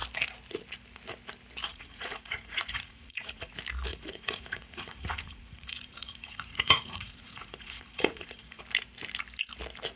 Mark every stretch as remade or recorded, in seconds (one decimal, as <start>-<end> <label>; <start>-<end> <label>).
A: 0.0-1.7 recorded; 1.7-3.5 remade; 3.5-3.9 recorded; 3.9-8.6 remade; 8.6-10.0 recorded